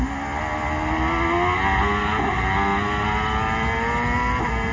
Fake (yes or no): no